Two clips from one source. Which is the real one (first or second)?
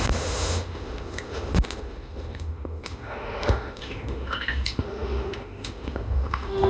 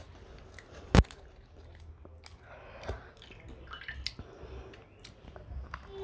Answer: second